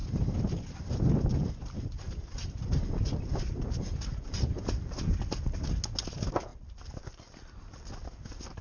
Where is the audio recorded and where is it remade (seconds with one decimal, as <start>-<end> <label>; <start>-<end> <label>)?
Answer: 0.0-8.6 recorded